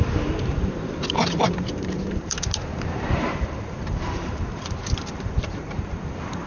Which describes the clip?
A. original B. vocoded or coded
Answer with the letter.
B